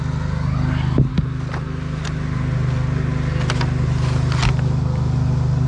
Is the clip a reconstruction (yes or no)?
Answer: no